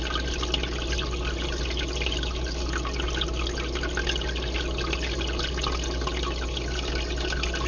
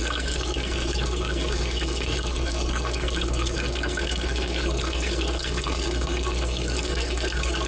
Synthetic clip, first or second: second